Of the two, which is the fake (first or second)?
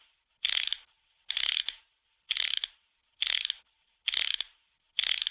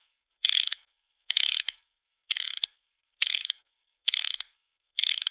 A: second